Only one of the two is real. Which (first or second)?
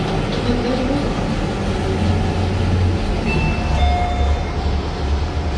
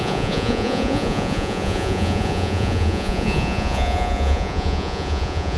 first